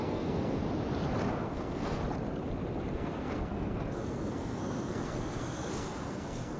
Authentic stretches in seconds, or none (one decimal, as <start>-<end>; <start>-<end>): 0.6-1.3; 2.0-2.9